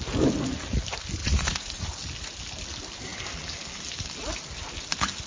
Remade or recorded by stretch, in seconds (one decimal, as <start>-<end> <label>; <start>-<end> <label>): 0.0-1.2 recorded; 1.2-1.8 remade; 1.8-5.3 recorded